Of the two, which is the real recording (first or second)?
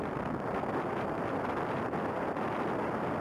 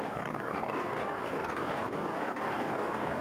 first